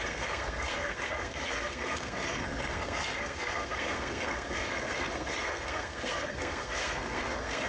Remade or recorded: remade